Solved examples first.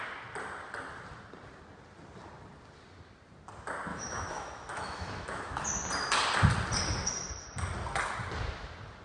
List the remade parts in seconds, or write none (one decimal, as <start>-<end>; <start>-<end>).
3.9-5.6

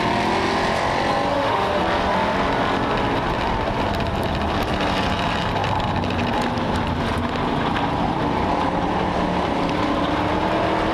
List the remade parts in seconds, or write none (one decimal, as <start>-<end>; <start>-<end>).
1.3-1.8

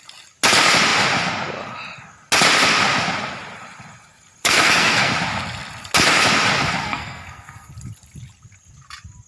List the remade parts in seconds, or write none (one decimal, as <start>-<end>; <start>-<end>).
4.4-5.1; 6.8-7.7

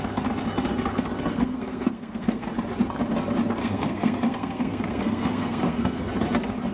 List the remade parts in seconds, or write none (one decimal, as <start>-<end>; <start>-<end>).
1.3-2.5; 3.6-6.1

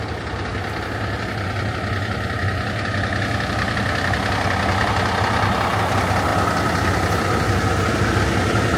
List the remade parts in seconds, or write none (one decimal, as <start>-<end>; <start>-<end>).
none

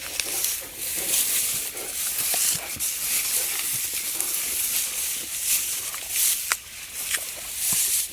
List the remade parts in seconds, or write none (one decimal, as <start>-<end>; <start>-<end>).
none